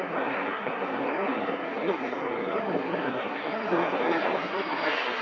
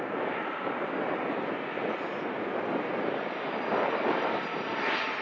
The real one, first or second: second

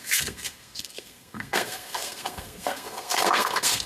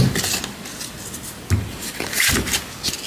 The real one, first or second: second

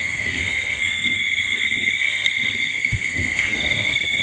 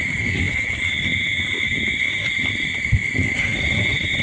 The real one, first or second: second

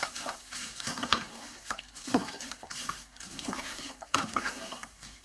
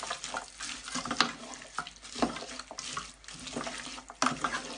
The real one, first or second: second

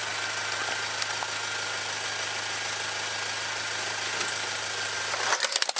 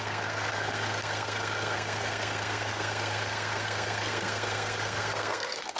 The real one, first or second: first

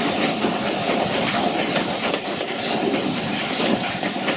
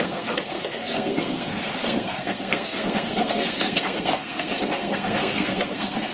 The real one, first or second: first